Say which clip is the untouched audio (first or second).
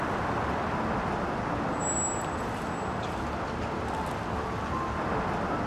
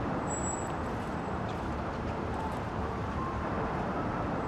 first